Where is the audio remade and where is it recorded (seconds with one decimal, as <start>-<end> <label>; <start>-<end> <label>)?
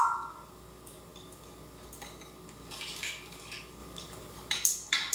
0.0-5.1 remade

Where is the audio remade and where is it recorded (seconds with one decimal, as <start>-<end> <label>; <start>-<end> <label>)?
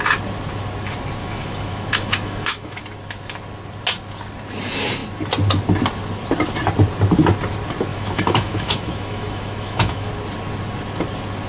0.0-1.2 recorded; 1.2-2.8 remade; 2.8-7.9 recorded; 7.9-10.1 remade; 10.1-11.5 recorded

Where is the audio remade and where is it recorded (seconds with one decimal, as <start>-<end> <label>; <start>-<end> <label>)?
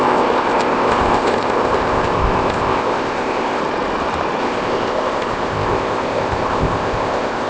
0.0-3.6 remade; 3.6-4.4 recorded; 4.4-7.5 remade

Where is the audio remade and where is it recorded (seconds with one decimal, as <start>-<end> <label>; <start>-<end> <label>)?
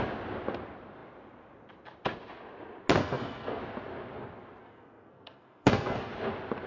0.0-3.0 recorded; 3.0-3.6 remade; 3.6-4.6 recorded; 4.6-6.1 remade; 6.1-6.7 recorded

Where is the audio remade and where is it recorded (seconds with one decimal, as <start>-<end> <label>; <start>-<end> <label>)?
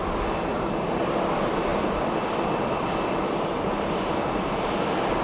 0.0-1.7 recorded; 1.7-4.8 remade; 4.8-5.2 recorded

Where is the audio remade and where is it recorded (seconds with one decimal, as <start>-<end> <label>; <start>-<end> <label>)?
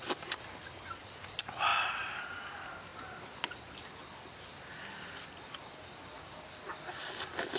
0.0-7.6 recorded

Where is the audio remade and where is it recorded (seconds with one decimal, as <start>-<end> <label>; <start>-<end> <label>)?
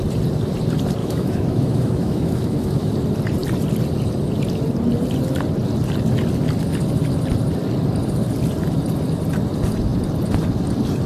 0.0-1.0 recorded; 1.0-2.9 remade; 2.9-11.1 recorded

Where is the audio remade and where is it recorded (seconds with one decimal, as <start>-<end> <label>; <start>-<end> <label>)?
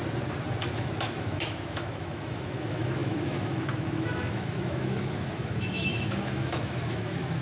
0.0-0.7 recorded; 0.7-7.4 remade